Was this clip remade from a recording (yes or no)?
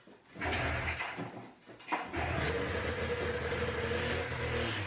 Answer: no